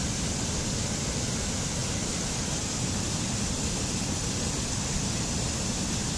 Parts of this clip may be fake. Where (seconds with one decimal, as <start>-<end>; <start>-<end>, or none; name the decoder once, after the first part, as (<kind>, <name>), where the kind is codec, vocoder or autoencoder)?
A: none